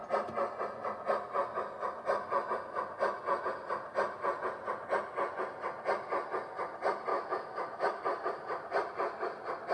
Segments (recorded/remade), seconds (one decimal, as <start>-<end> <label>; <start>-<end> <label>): 0.0-7.1 recorded; 7.1-8.0 remade; 8.0-9.7 recorded